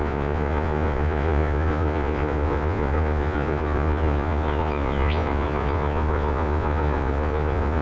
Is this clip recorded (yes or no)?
no